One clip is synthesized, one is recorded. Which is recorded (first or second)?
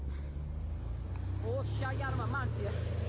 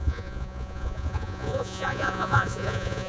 first